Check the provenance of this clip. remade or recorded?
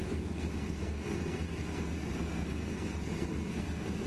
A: remade